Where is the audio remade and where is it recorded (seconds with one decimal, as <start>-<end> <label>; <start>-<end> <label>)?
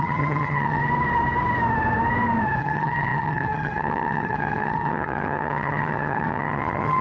0.0-0.8 remade; 0.8-2.6 recorded; 2.6-7.0 remade